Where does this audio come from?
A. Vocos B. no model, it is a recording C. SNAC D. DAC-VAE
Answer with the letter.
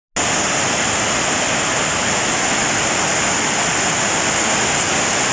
B